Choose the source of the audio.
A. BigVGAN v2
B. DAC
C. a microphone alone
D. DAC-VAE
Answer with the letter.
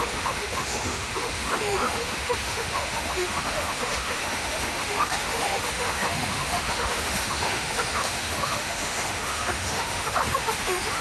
D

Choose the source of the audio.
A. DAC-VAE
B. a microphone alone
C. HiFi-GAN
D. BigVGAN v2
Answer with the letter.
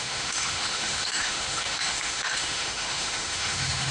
A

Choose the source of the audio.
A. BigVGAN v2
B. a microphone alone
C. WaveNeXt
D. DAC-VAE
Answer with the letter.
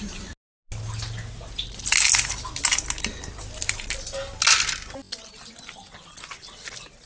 B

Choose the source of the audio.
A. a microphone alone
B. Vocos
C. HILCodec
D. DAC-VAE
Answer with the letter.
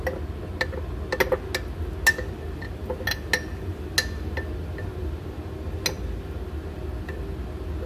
A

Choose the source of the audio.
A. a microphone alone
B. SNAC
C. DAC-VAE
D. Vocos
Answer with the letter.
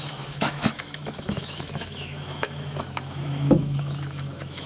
C